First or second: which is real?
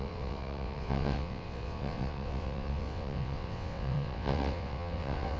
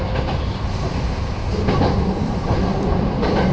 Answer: second